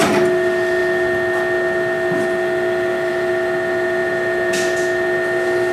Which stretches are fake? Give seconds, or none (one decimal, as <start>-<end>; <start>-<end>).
none